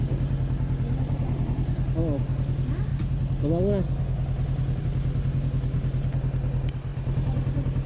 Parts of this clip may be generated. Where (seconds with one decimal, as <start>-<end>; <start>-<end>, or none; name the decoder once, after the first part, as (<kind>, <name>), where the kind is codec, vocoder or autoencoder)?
none